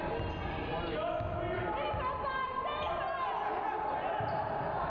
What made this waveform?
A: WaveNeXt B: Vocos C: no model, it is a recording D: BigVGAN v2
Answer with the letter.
C